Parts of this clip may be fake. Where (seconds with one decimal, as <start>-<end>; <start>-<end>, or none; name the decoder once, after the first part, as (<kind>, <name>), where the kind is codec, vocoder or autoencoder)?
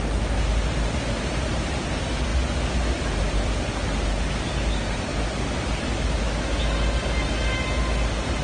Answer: none